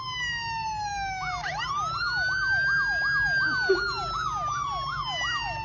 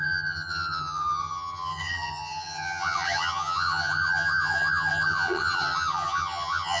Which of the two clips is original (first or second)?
first